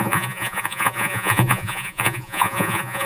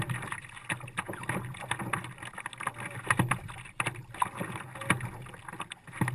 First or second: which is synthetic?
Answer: first